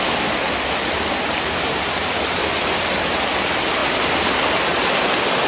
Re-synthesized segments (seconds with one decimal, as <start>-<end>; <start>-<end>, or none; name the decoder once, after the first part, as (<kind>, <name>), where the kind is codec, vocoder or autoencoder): none